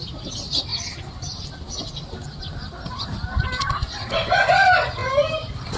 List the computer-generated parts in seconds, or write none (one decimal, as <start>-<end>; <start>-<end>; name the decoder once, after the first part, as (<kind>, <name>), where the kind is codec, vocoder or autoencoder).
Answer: none